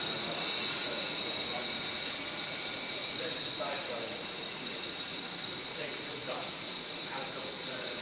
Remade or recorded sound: remade